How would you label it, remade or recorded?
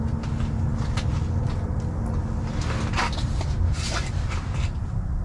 recorded